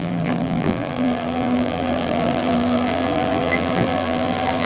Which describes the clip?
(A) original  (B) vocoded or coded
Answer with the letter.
B